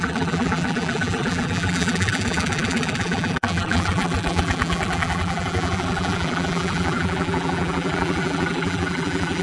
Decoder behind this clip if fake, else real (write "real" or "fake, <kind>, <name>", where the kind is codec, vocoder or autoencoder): fake, vocoder, BigVGAN v2